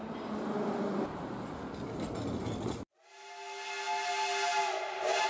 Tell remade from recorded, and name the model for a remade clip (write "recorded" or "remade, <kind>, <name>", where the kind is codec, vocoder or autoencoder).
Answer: recorded